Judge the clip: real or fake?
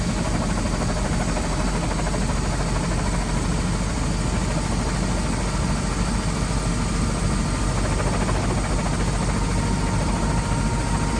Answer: real